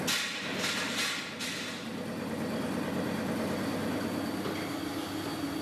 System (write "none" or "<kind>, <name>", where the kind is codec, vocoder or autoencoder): none